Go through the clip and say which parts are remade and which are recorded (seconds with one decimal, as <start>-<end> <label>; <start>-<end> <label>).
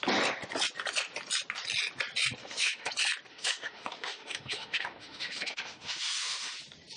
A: 0.0-2.4 recorded; 2.4-2.9 remade; 2.9-3.3 recorded; 3.3-6.6 remade; 6.6-7.0 recorded